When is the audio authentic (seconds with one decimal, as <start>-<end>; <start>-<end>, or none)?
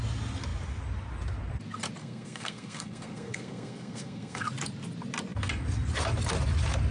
0.0-2.0; 4.5-6.9